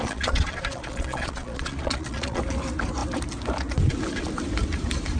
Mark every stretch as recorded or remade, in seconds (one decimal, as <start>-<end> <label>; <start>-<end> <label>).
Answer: 0.0-2.4 remade; 2.4-5.2 recorded